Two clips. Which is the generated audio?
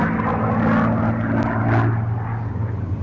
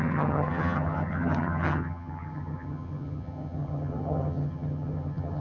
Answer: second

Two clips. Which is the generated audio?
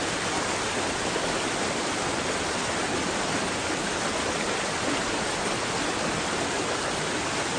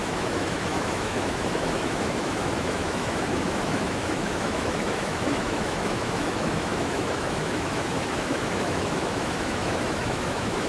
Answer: second